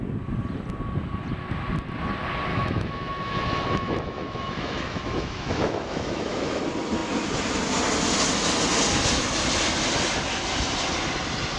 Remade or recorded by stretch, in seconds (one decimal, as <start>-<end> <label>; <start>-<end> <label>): 0.0-2.5 recorded; 2.5-6.6 remade; 6.6-11.6 recorded